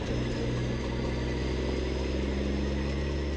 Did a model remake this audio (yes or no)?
no